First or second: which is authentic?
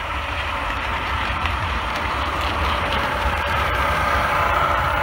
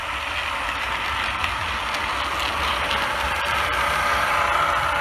second